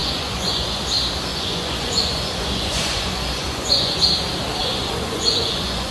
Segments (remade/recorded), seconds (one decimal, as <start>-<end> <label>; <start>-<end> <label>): 0.0-0.8 remade; 0.8-1.3 recorded; 1.3-4.0 remade; 4.0-4.6 recorded; 4.6-5.9 remade